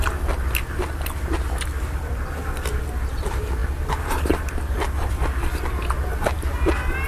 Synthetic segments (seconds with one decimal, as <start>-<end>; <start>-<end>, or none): none